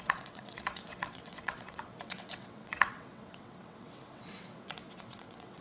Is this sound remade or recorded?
remade